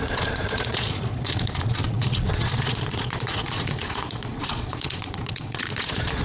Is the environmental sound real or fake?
fake